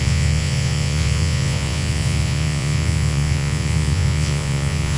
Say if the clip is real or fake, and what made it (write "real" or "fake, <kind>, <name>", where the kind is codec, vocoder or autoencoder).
fake, vocoder, Vocos